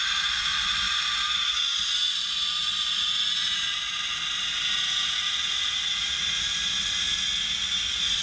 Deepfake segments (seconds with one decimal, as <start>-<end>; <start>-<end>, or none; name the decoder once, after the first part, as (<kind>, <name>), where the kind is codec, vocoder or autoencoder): none